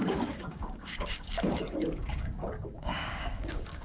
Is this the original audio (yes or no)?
no